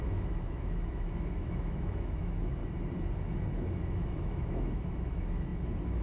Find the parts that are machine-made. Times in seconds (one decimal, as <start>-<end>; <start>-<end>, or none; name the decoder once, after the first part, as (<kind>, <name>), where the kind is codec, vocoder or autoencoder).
0.0-2.6 (autoencoder, DAC-VAE); 3.5-6.0